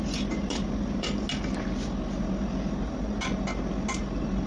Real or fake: real